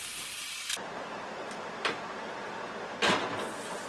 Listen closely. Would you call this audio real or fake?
real